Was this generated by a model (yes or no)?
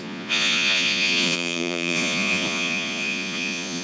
yes